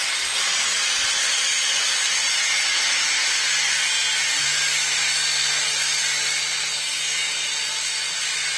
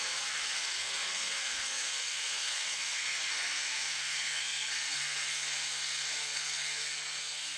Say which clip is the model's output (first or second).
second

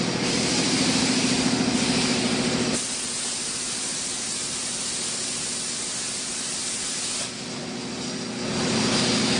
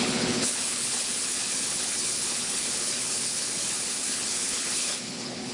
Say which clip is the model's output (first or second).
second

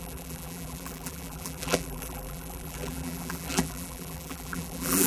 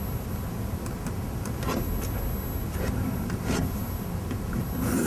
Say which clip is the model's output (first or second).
first